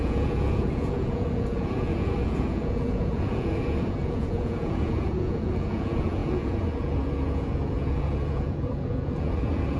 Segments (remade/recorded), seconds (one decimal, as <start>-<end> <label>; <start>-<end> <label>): 0.0-9.8 remade